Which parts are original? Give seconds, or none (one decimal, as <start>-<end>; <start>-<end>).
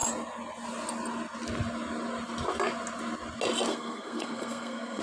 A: 0.0-3.7